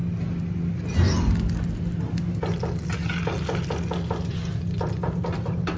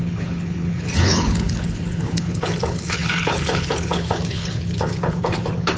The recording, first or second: first